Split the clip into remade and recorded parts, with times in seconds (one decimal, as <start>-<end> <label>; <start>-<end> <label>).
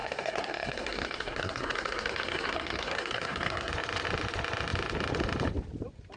0.0-3.7 remade; 3.7-6.2 recorded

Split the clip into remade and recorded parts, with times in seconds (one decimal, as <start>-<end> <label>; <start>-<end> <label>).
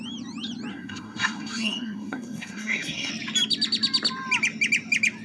0.0-0.7 recorded; 0.7-3.1 remade; 3.1-5.2 recorded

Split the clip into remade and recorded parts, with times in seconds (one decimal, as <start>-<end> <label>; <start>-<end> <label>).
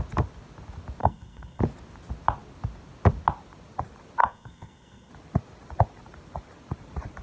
0.0-1.0 recorded; 1.0-1.6 remade; 1.6-4.2 recorded; 4.2-5.1 remade; 5.1-7.2 recorded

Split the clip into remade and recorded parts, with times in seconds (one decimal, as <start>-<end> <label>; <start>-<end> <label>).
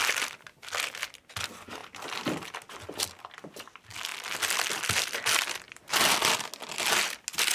0.0-7.5 recorded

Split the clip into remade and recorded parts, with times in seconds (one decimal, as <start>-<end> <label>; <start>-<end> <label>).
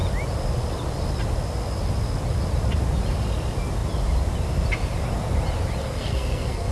0.0-5.8 recorded; 5.8-6.7 remade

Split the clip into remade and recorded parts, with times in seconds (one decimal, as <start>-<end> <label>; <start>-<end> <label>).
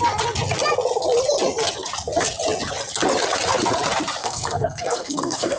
0.0-4.2 recorded; 4.2-5.6 remade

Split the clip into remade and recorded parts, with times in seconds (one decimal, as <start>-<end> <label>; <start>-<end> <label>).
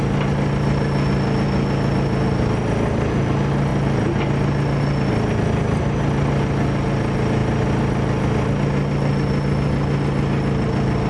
0.0-11.1 recorded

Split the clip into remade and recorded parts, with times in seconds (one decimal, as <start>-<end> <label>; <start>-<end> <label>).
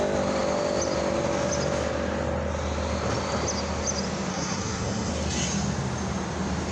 0.0-4.3 recorded; 4.3-5.1 remade; 5.1-6.7 recorded